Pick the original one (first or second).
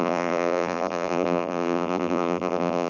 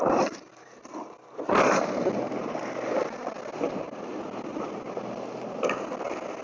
second